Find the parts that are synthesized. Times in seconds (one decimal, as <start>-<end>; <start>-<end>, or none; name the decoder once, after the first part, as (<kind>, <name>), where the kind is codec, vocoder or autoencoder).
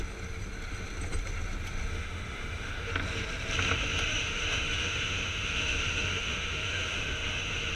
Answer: 1.9-2.9 (autoencoder, DAC-VAE); 4.1-7.7